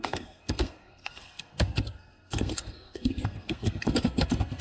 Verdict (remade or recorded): remade